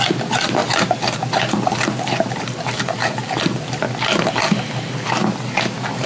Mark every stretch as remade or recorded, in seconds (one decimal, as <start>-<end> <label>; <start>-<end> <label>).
0.0-0.6 recorded; 0.6-4.3 remade; 4.3-6.1 recorded